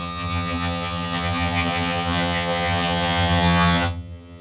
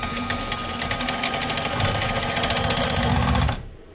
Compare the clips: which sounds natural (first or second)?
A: second